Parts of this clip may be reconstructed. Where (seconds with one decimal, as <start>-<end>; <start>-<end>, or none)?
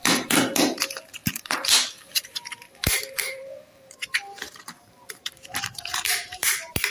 0.0-6.9